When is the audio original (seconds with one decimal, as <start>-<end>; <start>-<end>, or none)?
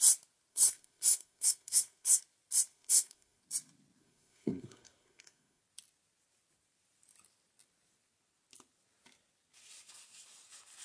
0.0-0.5; 2.2-2.7; 3.4-4.0; 5.6-10.8